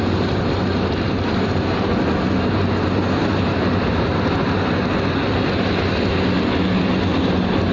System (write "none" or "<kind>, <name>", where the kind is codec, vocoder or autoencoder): none